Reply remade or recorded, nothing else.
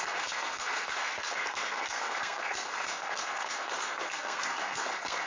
remade